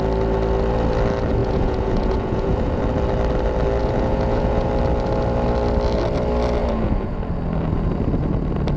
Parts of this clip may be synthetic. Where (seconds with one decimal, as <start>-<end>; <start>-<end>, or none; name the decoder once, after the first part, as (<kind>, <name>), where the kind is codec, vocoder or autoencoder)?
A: 1.4-2.8 (vocoder, Vocos); 3.8-4.7; 6.6-7.2